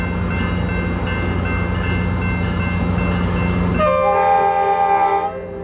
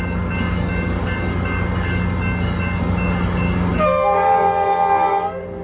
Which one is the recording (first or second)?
first